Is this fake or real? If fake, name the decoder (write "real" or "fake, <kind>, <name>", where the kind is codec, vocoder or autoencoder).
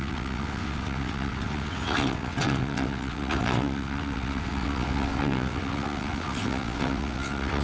fake, vocoder, WaveNeXt